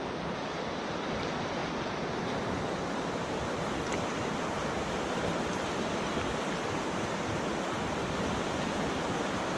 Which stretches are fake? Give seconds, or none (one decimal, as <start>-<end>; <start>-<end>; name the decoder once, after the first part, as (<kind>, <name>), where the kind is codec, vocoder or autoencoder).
none